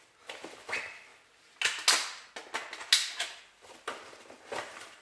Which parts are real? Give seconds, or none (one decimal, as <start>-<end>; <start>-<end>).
0.0-5.0